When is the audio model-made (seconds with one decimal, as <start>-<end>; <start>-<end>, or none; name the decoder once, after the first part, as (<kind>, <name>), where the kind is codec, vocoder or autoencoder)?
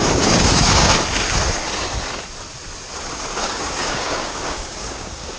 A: 0.0-0.9 (codec, DAC); 3.4-5.4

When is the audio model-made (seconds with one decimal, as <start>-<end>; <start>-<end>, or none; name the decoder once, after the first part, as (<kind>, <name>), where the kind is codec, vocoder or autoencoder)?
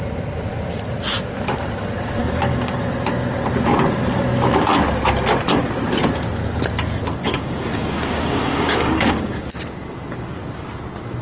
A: 2.2-2.9 (codec, DAC); 7.3-9.5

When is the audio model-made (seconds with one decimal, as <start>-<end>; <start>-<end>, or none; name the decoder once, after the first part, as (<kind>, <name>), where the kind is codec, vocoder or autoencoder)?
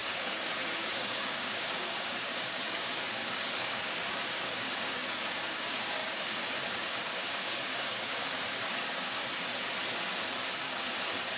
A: 0.0-9.2 (codec, DAC); 10.9-11.4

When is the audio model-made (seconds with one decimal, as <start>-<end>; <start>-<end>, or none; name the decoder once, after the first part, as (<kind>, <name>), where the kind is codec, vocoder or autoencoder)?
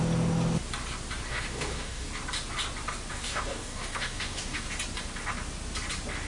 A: 1.3-2.1 (codec, DAC); 3.1-4.7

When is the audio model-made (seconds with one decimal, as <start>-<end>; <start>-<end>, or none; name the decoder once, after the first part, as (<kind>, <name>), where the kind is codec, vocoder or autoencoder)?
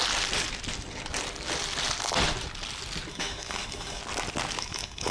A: 3.1-4.0 (codec, DAC); 4.6-5.1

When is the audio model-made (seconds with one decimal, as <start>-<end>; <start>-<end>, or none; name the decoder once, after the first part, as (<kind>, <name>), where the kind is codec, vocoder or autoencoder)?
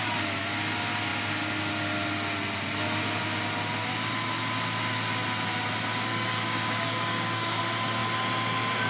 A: 6.1-7.6 (codec, DAC)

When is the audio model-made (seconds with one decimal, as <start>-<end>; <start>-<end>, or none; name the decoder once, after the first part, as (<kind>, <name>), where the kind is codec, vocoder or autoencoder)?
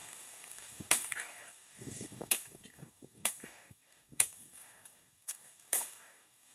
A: 0.0-6.5 (codec, DAC)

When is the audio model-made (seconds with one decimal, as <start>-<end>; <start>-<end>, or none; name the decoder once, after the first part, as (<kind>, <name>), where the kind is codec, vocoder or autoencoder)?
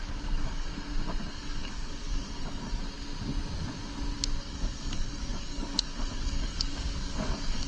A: 0.0-0.7 (codec, DAC); 1.3-2.8; 4.4-7.7